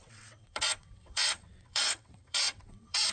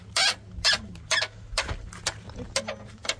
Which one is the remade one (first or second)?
first